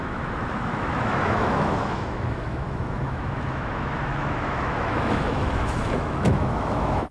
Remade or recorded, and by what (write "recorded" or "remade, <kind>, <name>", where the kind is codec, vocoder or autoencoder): remade, autoencoder, DAC-VAE